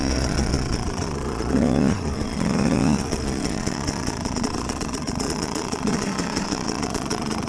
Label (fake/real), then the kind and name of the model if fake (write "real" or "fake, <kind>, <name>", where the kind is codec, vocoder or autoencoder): fake, vocoder, Vocos